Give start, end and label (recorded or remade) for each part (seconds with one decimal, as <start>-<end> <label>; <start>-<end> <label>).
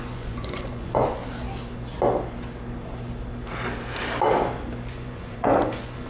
0.0-1.2 remade; 1.2-4.9 recorded; 4.9-6.1 remade